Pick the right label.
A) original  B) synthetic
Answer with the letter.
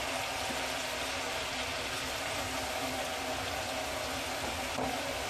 A